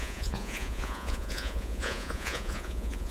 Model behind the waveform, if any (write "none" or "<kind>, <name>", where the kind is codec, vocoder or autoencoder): vocoder, Vocos